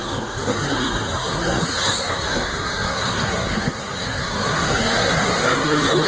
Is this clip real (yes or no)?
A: no